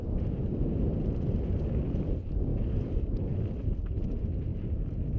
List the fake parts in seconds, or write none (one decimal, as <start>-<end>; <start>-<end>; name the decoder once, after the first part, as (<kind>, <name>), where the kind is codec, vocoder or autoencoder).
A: 0.0-0.9 (vocoder, BigVGAN v2); 1.4-5.2

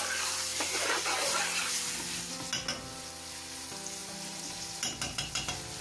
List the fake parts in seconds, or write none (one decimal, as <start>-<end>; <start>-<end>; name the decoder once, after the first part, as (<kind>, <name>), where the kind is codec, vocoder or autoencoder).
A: 0.5-1.7 (vocoder, BigVGAN v2); 4.0-5.2

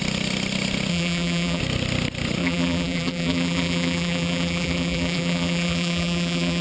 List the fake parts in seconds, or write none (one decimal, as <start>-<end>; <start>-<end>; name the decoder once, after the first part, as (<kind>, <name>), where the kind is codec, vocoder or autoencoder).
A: 0.9-1.6 (vocoder, BigVGAN v2); 2.4-6.6